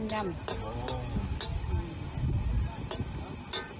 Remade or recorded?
recorded